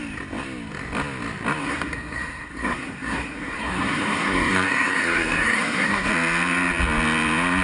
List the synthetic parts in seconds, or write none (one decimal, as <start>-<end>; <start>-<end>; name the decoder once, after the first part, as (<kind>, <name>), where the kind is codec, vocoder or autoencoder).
1.6-6.1 (codec, SNAC)